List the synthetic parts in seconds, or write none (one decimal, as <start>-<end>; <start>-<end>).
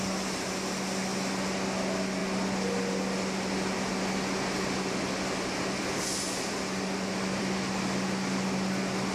none